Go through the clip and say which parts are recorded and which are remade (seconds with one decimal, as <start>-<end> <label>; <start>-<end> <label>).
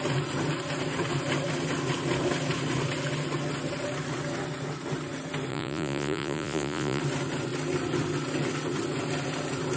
0.0-5.5 recorded; 5.5-7.0 remade; 7.0-9.8 recorded